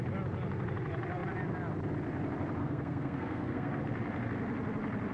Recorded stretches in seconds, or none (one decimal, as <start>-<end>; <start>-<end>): 0.0-2.6; 3.8-5.1

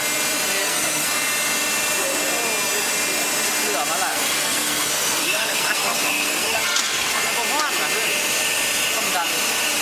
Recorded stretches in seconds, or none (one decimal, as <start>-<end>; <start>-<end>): 0.0-0.6; 1.1-4.1; 7.3-9.8

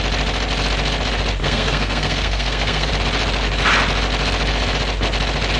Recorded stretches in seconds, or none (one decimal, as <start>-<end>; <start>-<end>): 0.0-1.4; 2.9-5.6

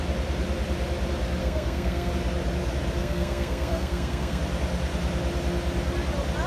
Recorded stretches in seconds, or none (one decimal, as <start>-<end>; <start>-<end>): 0.0-1.4; 2.1-3.0; 4.4-6.5

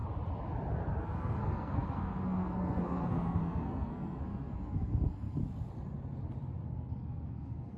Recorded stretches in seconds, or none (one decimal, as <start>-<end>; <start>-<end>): 0.0-1.0; 5.4-6.6

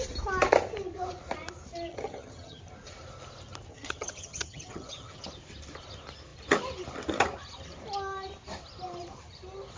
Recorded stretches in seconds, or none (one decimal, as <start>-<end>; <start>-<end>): 0.0-1.9; 2.6-3.7; 5.2-9.8